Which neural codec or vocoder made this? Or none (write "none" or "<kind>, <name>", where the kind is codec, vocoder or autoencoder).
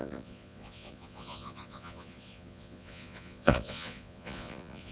vocoder, Vocos